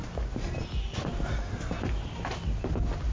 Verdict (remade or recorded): recorded